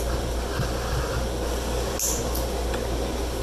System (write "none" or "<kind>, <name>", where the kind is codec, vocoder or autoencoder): none